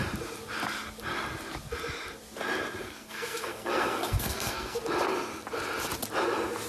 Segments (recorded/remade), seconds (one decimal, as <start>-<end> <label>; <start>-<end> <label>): 0.0-2.8 recorded; 2.8-4.8 remade; 4.8-6.7 recorded